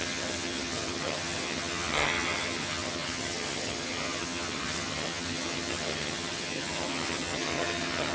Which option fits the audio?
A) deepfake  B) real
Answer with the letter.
A